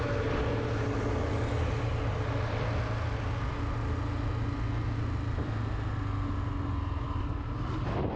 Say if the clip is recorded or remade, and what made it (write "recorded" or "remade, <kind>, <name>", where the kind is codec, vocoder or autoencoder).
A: recorded